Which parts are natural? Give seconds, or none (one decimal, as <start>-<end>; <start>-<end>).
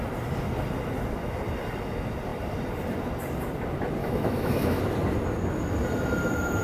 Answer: 0.0-4.0; 4.8-6.6